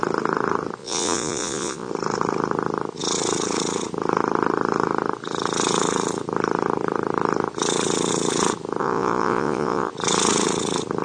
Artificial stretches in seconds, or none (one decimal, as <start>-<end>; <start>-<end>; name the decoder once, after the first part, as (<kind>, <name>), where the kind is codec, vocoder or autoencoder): 0.8-1.9 (vocoder, Vocos); 8.8-9.9